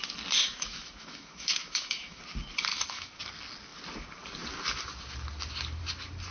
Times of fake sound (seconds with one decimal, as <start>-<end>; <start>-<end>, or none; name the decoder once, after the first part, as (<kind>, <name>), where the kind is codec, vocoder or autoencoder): 0.4-2.2 (autoencoder, DAC-VAE); 2.7-3.2